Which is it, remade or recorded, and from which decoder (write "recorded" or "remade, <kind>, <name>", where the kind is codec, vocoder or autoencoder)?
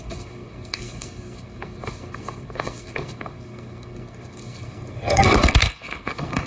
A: remade, codec, SNAC